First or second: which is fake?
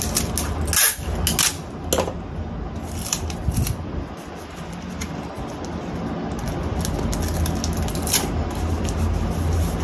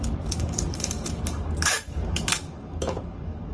second